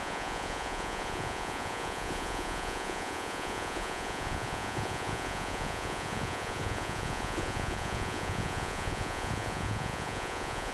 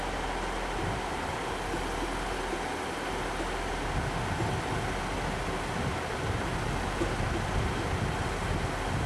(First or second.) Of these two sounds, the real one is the second